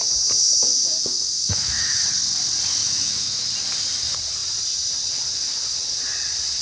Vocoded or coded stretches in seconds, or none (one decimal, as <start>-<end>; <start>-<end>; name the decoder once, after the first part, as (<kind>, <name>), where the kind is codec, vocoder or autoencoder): 0.4-2.0 (autoencoder, DAC-VAE); 2.8-3.5